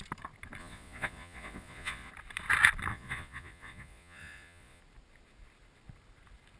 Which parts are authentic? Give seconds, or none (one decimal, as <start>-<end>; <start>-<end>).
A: 0.0-0.6; 2.1-2.9; 4.8-6.6